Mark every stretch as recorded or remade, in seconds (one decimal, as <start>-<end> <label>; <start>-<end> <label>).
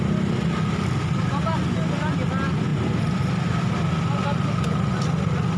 0.0-5.6 recorded